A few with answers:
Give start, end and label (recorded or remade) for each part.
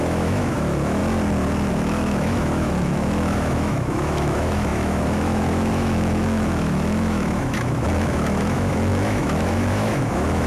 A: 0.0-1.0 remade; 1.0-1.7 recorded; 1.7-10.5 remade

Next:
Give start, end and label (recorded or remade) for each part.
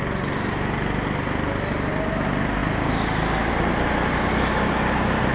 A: 0.0-5.3 recorded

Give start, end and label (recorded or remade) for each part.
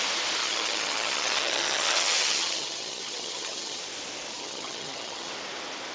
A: 0.0-0.4 recorded; 0.4-3.8 remade; 3.8-4.3 recorded; 4.3-5.3 remade; 5.3-5.9 recorded